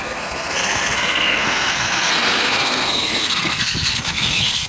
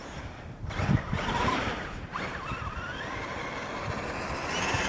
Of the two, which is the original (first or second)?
second